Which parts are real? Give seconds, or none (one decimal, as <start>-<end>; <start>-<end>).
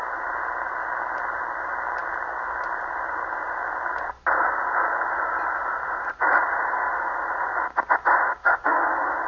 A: 0.0-8.4; 8.9-9.3